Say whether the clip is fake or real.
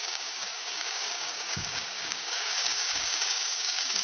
fake